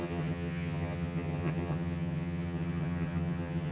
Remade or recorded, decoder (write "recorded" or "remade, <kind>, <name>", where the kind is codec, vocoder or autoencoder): remade, vocoder, HiFi-GAN